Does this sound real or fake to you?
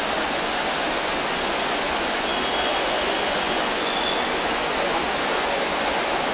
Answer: fake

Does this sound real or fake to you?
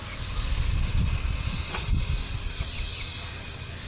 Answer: real